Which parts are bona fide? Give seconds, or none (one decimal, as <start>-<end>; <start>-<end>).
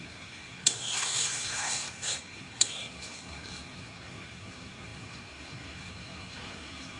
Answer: none